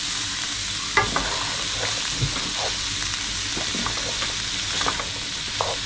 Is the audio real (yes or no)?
yes